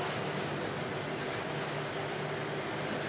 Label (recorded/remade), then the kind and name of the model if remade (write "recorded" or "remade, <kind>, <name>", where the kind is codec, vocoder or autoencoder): recorded